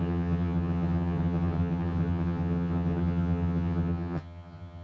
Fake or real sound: fake